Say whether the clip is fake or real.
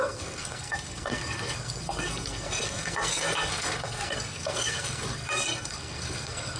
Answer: fake